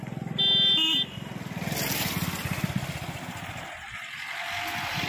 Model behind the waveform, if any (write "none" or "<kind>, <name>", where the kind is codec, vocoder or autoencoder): none